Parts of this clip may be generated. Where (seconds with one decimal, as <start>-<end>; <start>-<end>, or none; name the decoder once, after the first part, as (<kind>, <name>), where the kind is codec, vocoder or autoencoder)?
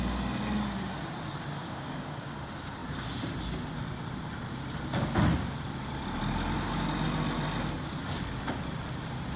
1.6-2.3 (codec, DAC)